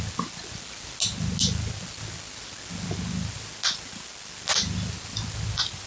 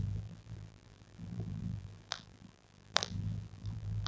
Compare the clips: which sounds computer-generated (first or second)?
second